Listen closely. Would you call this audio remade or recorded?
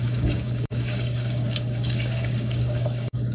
remade